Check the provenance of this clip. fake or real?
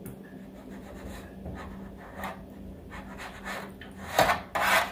real